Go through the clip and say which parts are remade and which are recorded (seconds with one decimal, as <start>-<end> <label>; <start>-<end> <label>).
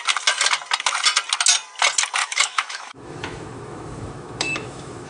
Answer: 0.0-2.2 recorded; 2.2-5.1 remade